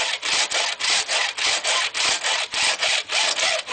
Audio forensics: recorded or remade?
remade